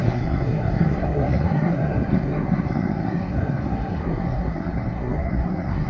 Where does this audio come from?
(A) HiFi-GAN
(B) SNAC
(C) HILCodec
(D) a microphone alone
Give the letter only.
B